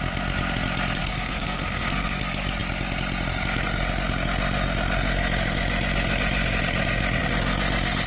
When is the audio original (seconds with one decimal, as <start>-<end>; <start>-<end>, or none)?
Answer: 0.0-1.0; 2.2-8.1